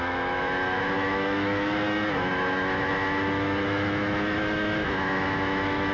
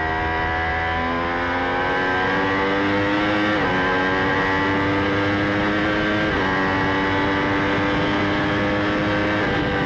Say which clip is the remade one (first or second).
first